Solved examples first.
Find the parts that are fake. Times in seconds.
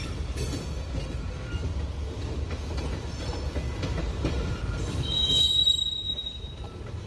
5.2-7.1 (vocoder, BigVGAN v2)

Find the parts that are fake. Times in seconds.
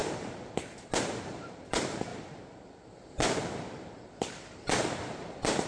1.3-2.1 (vocoder, BigVGAN v2)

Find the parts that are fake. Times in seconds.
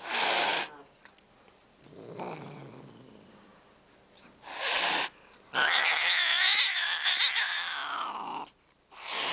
0.0-0.5 (vocoder, BigVGAN v2); 1.3-2.6; 3.1-3.5; 6.6-9.3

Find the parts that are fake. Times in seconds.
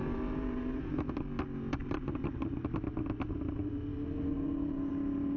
0.0-1.0 (vocoder, BigVGAN v2); 1.8-2.4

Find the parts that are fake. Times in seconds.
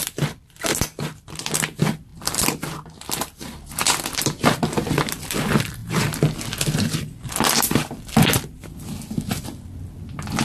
0.0-5.8 (vocoder, BigVGAN v2); 6.8-10.4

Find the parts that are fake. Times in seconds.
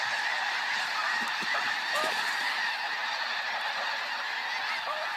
1.0-2.4 (vocoder, BigVGAN v2); 3.0-3.7